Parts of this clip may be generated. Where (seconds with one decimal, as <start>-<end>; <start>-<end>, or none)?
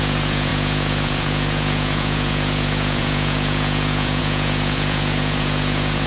0.0-6.1